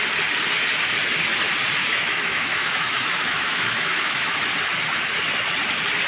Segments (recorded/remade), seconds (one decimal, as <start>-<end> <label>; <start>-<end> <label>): 0.0-1.8 recorded; 1.8-4.4 remade; 4.4-6.1 recorded